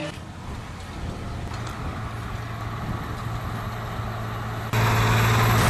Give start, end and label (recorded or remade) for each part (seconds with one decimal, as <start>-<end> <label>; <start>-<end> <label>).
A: 0.0-5.7 recorded